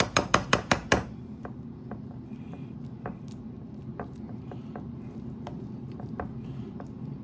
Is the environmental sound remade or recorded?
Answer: remade